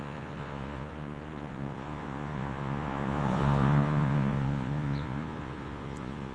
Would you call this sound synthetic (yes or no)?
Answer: yes